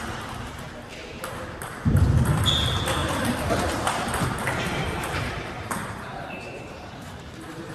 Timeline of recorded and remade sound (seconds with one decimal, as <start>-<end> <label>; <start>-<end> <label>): 0.0-3.0 recorded; 3.0-7.7 remade